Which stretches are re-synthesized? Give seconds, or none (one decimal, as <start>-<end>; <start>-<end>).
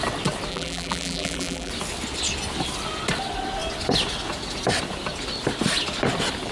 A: 0.5-1.7